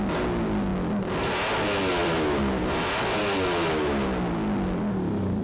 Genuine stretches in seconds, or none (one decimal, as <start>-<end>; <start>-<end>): 0.0-2.0; 3.2-5.4